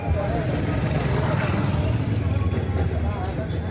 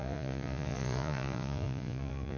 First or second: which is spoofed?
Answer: second